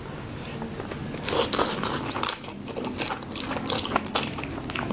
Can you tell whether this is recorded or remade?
recorded